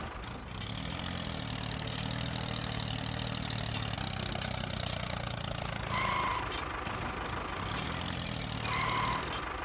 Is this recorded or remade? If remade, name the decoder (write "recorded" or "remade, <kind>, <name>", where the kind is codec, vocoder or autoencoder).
recorded